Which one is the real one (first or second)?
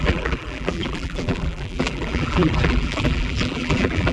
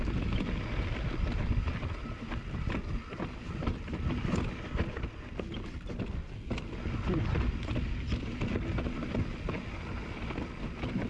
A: second